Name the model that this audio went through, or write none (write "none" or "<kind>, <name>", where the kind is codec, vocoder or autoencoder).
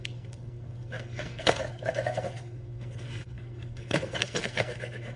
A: codec, SNAC